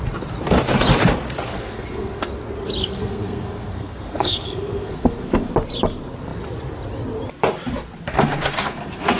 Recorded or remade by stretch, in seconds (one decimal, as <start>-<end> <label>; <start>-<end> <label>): 0.0-1.5 recorded; 1.5-2.3 remade; 2.3-2.8 recorded; 2.8-5.5 remade; 5.5-8.1 recorded; 8.1-9.2 remade